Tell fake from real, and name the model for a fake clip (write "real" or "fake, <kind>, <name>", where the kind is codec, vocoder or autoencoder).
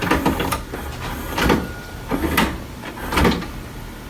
real